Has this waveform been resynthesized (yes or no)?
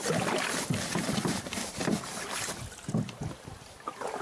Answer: no